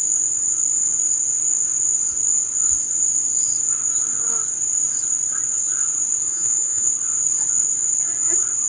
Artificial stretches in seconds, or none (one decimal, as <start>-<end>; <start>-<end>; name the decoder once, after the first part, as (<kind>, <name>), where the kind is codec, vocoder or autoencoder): 6.3-6.9 (vocoder, Vocos)